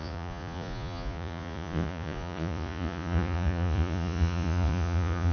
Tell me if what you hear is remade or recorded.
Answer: remade